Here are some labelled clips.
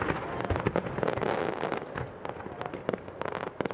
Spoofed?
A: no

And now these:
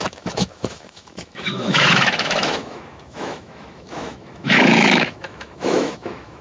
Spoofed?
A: yes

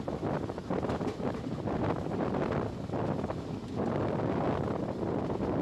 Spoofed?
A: no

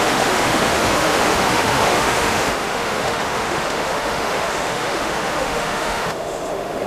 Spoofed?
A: yes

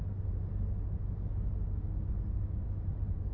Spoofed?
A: no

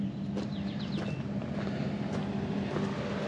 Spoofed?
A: no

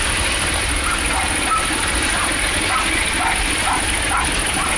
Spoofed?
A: no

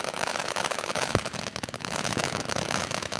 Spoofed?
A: yes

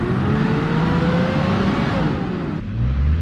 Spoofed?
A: no